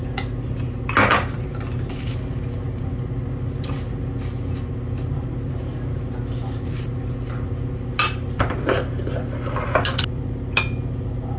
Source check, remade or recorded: recorded